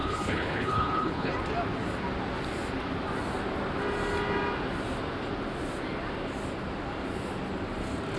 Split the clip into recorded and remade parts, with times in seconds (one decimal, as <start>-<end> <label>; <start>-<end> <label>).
0.0-1.3 remade; 1.3-8.2 recorded